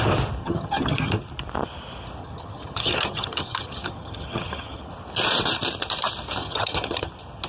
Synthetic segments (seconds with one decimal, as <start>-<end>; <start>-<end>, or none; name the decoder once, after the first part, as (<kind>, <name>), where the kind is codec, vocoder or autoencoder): 0.4-1.1 (vocoder, HiFi-GAN); 2.2-4.9; 6.4-7.1